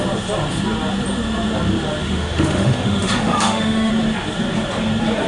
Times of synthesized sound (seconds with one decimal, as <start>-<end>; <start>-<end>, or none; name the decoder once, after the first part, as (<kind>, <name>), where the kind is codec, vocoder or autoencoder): 2.0-3.9 (autoencoder, DAC-VAE)